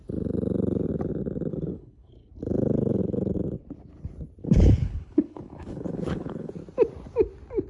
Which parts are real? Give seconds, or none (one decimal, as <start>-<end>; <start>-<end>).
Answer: 0.0-1.5; 2.1-4.4; 6.5-7.7